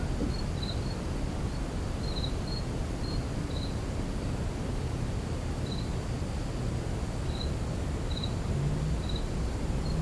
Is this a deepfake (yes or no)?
no